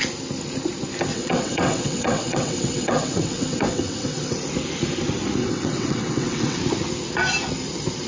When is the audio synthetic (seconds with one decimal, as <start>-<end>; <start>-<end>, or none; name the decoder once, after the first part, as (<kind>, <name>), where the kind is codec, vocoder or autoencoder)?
1.1-4.4 (vocoder, WaveNeXt); 5.4-6.6